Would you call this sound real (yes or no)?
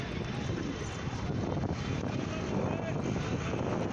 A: yes